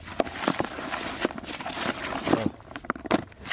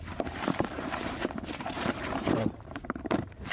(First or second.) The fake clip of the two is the second